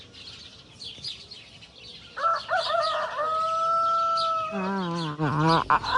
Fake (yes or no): no